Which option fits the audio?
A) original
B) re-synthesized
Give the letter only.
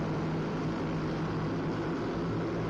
A